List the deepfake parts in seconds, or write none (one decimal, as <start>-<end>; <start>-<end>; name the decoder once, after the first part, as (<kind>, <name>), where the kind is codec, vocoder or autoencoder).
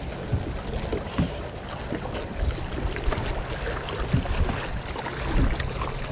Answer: none